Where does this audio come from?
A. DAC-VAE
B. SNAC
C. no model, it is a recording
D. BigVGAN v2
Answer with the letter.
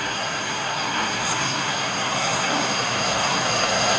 B